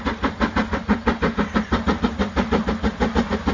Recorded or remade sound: recorded